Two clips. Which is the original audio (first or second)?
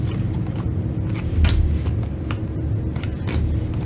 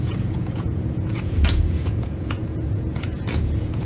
first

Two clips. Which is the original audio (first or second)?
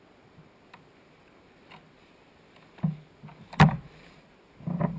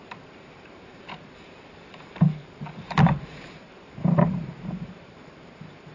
first